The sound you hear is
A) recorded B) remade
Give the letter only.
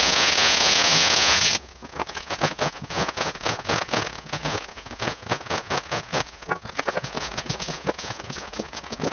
B